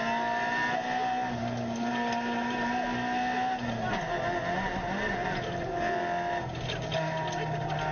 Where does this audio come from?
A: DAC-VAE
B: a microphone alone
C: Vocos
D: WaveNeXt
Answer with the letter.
B